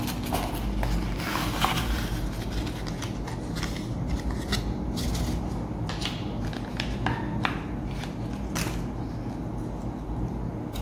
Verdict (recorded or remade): recorded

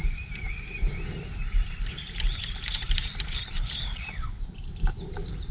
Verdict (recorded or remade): remade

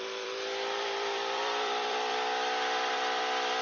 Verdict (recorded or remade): remade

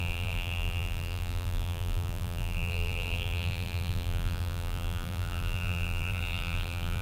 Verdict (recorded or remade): remade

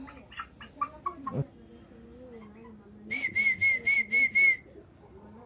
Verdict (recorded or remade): recorded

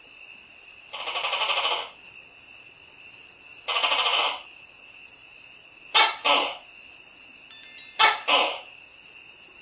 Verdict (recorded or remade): recorded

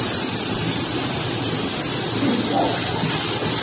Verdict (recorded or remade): remade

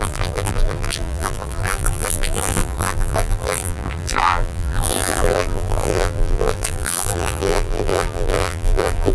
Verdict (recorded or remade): remade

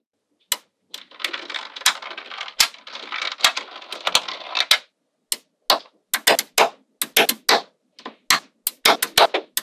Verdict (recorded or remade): recorded